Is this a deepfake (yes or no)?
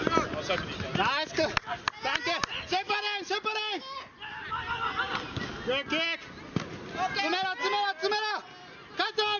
no